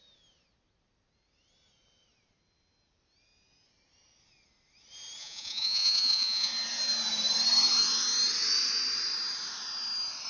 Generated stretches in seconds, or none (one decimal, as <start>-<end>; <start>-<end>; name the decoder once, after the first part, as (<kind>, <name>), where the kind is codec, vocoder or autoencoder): 5.2-6.5 (vocoder, Vocos)